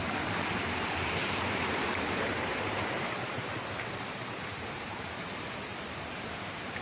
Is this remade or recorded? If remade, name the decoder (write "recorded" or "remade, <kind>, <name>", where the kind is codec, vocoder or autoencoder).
remade, vocoder, BigVGAN v2